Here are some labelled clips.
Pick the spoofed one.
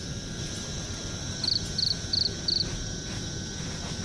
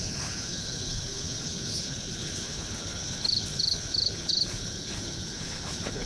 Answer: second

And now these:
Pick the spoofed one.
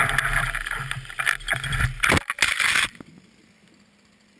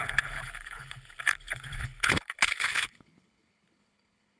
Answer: second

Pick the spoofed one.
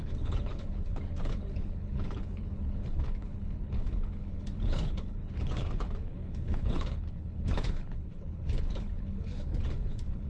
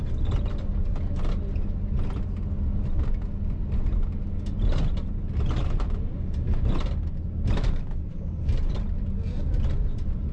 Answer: first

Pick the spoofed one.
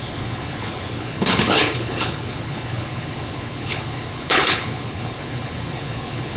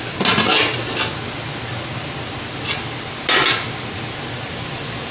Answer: first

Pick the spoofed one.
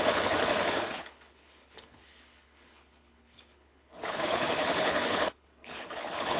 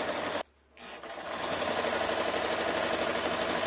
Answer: first